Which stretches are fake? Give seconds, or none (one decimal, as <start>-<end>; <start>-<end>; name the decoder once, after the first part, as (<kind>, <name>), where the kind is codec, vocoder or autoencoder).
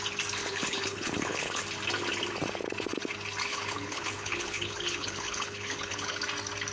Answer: 0.4-1.6 (codec, HILCodec); 3.5-6.2